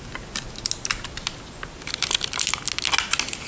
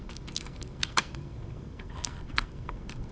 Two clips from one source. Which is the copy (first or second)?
second